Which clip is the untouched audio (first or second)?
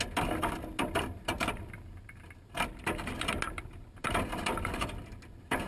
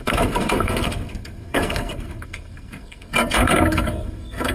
first